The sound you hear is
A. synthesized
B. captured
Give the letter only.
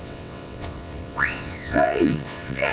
A